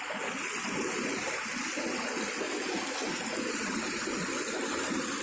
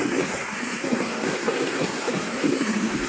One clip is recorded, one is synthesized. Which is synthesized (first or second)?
second